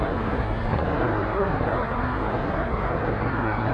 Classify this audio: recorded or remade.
remade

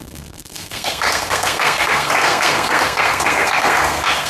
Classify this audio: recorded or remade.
remade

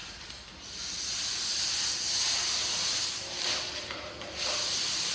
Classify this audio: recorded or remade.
recorded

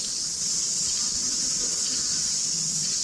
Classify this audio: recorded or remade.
recorded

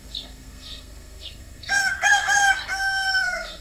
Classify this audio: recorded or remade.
remade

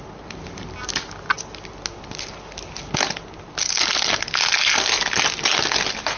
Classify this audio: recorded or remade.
recorded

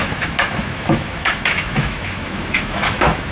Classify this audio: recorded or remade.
remade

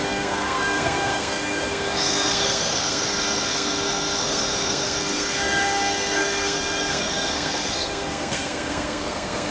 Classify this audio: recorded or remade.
remade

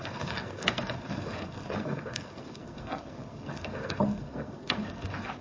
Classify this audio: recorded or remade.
remade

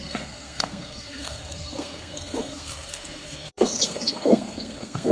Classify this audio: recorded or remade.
remade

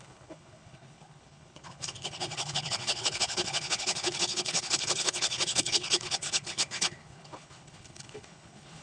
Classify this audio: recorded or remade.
remade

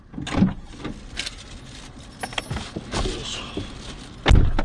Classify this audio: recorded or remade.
recorded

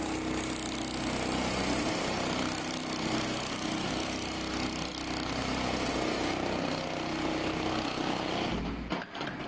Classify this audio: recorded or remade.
recorded